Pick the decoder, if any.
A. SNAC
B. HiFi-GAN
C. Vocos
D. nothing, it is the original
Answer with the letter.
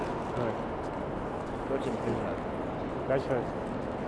D